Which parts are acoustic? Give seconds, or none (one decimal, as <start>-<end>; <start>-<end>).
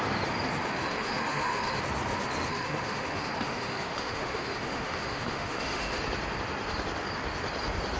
0.0-0.6; 1.8-2.5; 6.0-8.0